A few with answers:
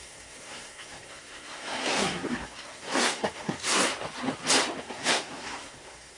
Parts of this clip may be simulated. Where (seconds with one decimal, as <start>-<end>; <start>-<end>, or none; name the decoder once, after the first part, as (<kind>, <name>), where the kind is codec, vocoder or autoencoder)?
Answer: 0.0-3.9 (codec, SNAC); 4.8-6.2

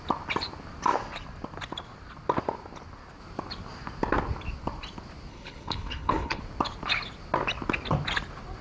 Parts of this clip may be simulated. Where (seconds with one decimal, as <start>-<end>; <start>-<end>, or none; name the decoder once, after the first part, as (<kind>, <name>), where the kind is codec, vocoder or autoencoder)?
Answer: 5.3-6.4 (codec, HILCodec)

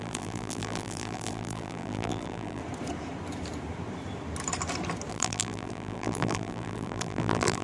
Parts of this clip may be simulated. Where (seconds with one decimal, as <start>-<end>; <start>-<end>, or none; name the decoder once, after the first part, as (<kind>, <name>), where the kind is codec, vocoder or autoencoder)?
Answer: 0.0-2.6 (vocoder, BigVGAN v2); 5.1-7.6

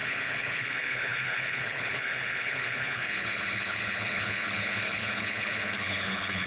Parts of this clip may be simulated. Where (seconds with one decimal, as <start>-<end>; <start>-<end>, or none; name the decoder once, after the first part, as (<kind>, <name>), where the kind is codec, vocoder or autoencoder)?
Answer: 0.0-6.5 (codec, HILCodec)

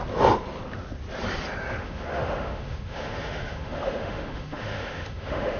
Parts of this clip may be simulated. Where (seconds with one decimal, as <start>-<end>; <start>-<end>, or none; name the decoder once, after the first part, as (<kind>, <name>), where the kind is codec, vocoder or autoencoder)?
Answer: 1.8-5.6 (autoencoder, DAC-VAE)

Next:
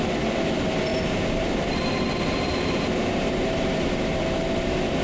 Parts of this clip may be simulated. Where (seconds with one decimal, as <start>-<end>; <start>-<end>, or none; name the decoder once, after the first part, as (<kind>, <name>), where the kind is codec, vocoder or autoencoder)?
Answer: 0.9-3.9 (vocoder, BigVGAN v2)

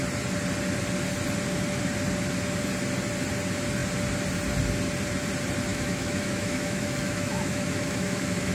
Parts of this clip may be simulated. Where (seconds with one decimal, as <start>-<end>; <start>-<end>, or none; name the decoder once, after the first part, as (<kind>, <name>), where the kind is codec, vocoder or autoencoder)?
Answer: 5.7-8.5 (autoencoder, DAC-VAE)